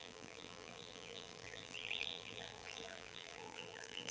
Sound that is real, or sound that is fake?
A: fake